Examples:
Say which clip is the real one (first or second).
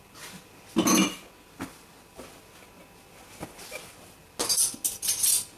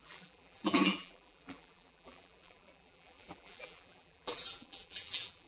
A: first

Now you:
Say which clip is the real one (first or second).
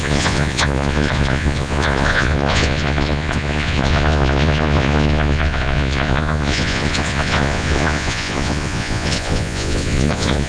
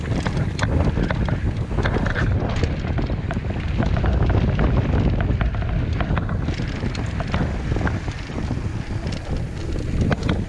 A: second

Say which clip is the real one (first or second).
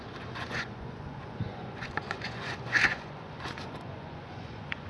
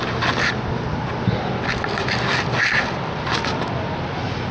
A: second